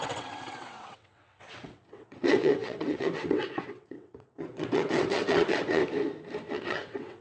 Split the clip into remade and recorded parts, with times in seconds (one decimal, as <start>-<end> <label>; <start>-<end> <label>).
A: 0.0-5.8 remade; 5.8-6.5 recorded; 6.5-7.2 remade